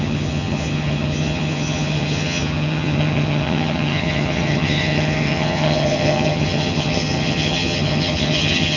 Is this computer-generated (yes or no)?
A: yes